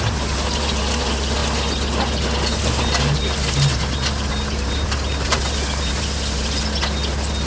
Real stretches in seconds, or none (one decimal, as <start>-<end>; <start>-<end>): 0.0-7.5